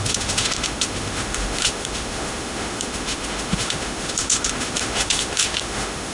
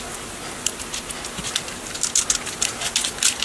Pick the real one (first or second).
second